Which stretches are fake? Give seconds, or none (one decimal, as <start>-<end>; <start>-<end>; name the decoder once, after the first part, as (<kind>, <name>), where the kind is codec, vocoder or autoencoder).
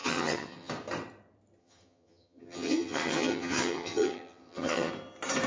0.0-0.7 (vocoder, HiFi-GAN); 1.6-4.9